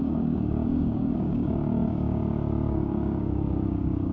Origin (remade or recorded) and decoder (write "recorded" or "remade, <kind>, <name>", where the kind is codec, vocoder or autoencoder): remade, codec, DAC